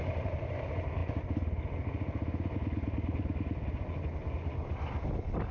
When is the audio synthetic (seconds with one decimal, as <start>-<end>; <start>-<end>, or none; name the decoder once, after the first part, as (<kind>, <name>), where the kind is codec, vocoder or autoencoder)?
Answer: none